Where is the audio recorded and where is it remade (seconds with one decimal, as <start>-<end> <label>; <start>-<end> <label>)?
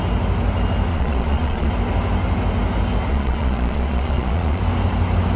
0.0-0.9 recorded; 0.9-1.7 remade; 1.7-3.1 recorded; 3.1-4.6 remade; 4.6-5.4 recorded